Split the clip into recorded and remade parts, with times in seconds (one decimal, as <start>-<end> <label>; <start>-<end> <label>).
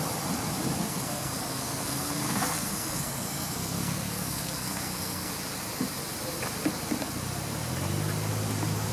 0.0-0.8 recorded; 0.8-5.3 remade; 5.3-8.9 recorded